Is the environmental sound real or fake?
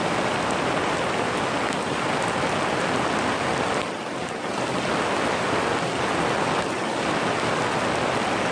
real